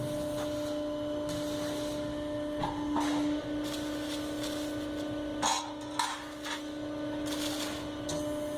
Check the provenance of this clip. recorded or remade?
recorded